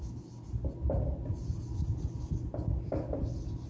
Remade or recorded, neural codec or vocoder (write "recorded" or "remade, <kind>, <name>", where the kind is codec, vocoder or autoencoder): recorded